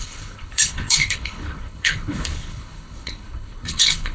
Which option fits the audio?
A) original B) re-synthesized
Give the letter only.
B